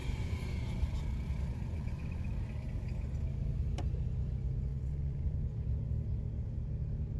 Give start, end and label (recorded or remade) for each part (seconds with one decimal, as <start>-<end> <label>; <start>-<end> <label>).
0.0-0.9 remade; 0.9-1.5 recorded; 1.5-2.3 remade; 2.3-4.7 recorded; 4.7-5.4 remade; 5.4-7.2 recorded